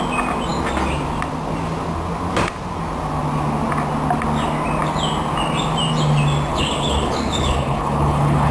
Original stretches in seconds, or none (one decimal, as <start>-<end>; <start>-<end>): 0.0-6.5